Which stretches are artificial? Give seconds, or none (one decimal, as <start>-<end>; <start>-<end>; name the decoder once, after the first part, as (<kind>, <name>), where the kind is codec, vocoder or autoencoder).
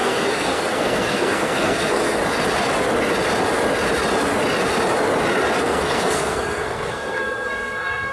0.0-2.2 (codec, SNAC); 5.6-8.1